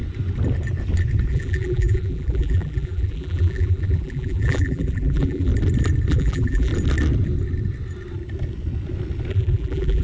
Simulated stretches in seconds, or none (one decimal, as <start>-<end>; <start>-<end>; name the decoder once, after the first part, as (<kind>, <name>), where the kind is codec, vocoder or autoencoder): 1.3-5.5 (vocoder, BigVGAN v2); 6.1-6.7; 9.3-10.0